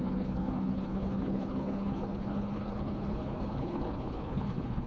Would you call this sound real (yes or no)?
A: no